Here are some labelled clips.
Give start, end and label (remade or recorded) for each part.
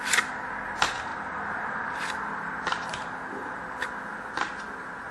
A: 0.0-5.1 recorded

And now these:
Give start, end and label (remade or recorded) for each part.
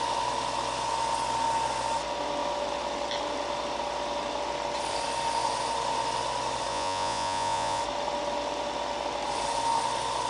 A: 0.0-6.7 recorded; 6.7-7.8 remade; 7.8-10.3 recorded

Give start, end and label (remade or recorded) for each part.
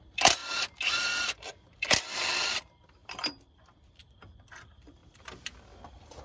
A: 0.0-0.4 remade; 0.4-1.5 recorded; 1.5-6.2 remade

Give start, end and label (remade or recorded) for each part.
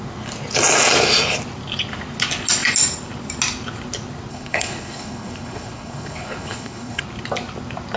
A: 0.0-4.3 recorded; 4.3-7.0 remade; 7.0-8.0 recorded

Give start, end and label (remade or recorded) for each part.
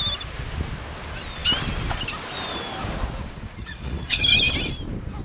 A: 0.0-3.6 recorded; 3.6-4.2 remade; 4.2-5.2 recorded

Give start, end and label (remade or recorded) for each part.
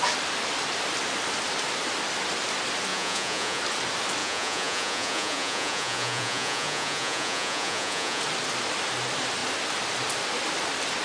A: 0.0-2.9 recorded; 2.9-3.6 remade; 3.6-4.2 recorded; 4.2-8.2 remade; 8.2-11.0 recorded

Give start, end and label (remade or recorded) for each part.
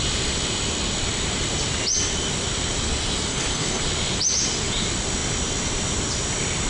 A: 0.0-3.3 recorded; 3.3-3.8 remade; 3.8-6.7 recorded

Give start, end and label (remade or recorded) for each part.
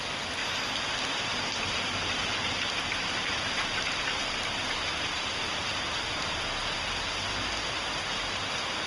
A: 0.0-2.2 recorded; 2.2-5.8 remade; 5.8-8.9 recorded